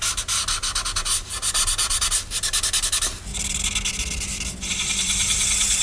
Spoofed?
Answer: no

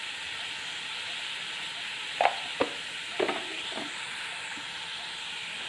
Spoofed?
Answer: no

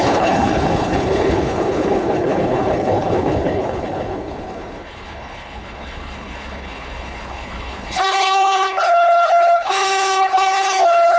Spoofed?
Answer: yes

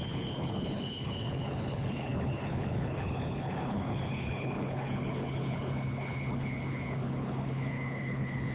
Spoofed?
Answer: yes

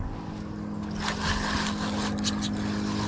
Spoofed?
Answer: no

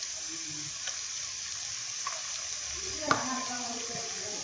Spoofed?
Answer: no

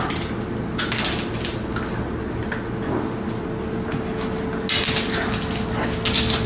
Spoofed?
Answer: no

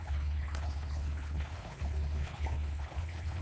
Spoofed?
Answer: yes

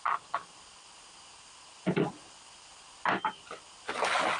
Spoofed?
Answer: no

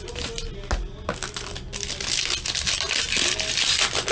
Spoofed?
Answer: no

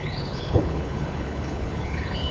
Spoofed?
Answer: yes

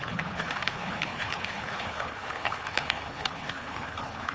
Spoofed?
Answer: yes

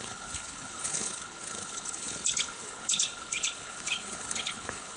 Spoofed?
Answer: yes